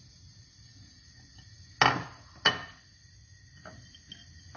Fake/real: real